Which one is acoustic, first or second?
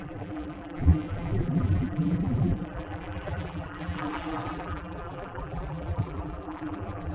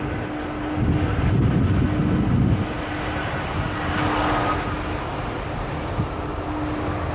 second